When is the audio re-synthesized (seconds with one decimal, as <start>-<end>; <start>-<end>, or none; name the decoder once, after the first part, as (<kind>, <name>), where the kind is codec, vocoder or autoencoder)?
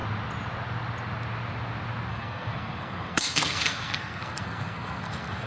2.1-5.5 (codec, SNAC)